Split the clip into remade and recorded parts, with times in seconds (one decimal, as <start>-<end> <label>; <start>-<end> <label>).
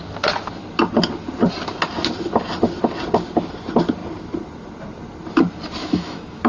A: 0.0-5.8 recorded; 5.8-6.5 remade